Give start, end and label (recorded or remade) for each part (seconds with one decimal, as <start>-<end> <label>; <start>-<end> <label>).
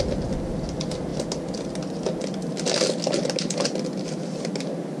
0.0-5.0 recorded